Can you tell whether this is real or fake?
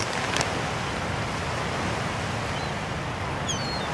real